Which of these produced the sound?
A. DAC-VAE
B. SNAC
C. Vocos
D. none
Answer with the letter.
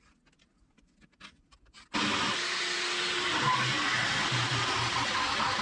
D